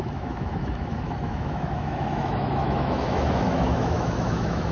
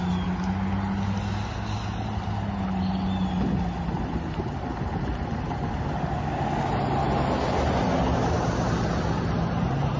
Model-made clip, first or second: first